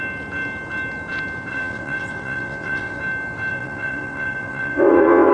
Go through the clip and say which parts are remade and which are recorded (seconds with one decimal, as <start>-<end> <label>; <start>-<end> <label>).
0.0-1.5 recorded; 1.5-3.0 remade; 3.0-3.5 recorded; 3.5-5.3 remade